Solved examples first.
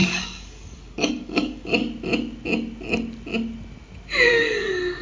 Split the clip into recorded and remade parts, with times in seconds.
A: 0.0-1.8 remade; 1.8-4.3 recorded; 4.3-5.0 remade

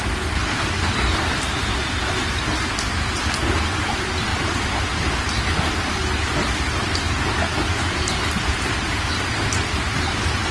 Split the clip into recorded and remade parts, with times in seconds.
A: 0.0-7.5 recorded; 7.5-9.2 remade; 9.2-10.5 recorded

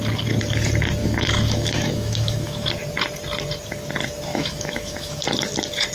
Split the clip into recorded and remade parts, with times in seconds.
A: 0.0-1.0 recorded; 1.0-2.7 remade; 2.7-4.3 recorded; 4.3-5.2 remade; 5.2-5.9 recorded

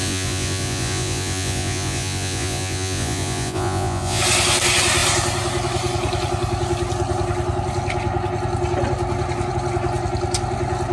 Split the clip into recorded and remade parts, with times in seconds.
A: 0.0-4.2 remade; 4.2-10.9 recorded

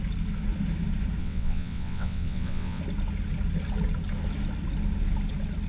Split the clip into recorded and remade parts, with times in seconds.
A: 0.0-1.2 recorded; 1.2-2.8 remade; 2.8-5.7 recorded